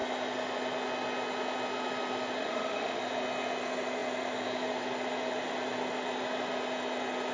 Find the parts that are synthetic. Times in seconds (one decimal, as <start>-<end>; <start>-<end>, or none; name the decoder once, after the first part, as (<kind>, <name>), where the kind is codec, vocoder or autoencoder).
2.4-3.0 (autoencoder, DAC-VAE)